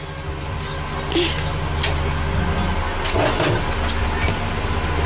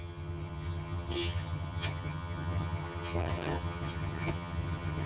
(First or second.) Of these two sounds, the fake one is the second